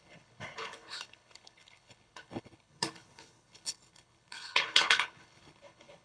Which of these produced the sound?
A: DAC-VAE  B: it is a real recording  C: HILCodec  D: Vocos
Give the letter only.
C